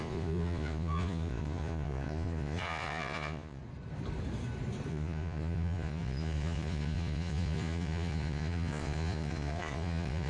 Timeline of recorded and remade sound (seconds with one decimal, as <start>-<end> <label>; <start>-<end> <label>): 0.0-3.6 remade; 3.6-4.9 recorded; 4.9-10.3 remade